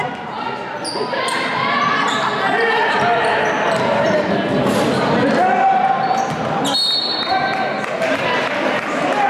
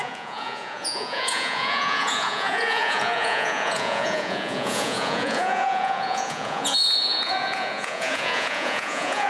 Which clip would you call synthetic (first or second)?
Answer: second